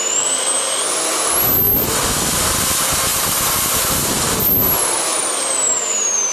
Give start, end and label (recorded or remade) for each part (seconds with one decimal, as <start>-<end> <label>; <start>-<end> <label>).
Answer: 0.0-3.1 recorded; 3.1-4.1 remade; 4.1-6.3 recorded